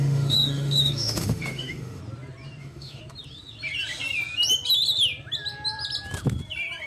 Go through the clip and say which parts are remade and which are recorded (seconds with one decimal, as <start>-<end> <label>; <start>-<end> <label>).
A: 0.0-2.0 remade; 2.0-2.6 recorded; 2.6-3.0 remade; 3.0-6.9 recorded

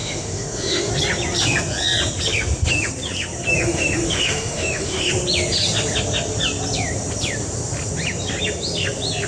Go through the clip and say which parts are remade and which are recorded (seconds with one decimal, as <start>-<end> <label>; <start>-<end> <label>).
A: 0.0-0.9 remade; 0.9-3.6 recorded; 3.6-5.1 remade; 5.1-9.3 recorded